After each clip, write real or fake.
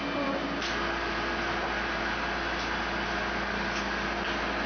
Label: real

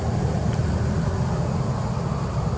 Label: real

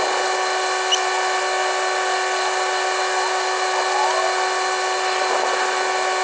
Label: real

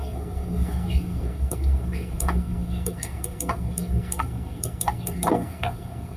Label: fake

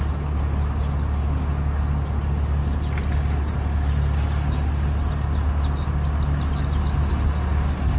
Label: real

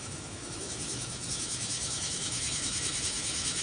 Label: fake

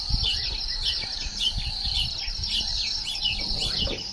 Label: real